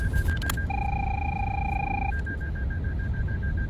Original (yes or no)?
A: yes